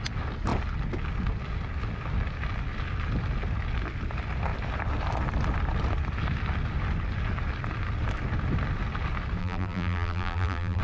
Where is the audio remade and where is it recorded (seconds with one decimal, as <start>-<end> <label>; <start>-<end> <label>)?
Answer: 0.0-9.4 recorded; 9.4-10.8 remade